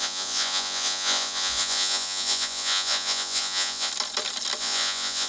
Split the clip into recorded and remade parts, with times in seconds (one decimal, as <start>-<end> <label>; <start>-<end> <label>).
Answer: 0.0-3.9 remade; 3.9-4.6 recorded; 4.6-5.3 remade